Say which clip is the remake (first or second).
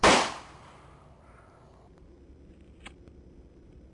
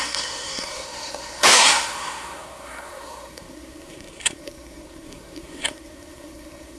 second